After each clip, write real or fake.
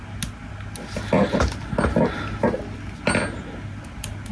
real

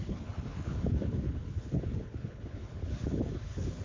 fake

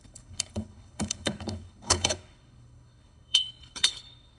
fake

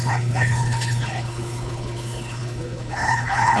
fake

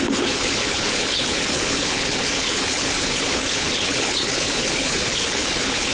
fake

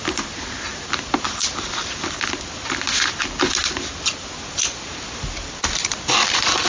real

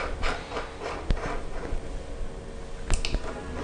real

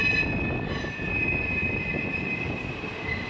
real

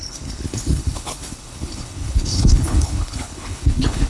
fake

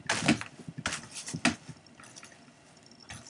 real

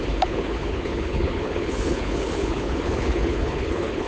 fake